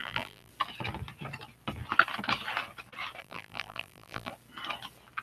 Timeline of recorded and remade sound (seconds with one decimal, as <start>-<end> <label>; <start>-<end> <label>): 0.0-0.5 remade; 0.5-3.2 recorded; 3.2-4.3 remade; 4.3-5.2 recorded